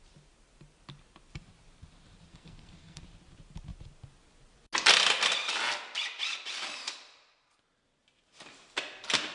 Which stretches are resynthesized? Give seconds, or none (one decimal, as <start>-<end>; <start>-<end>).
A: 2.3-3.0